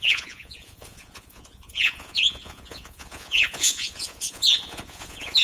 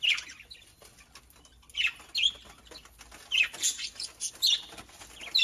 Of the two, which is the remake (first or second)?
first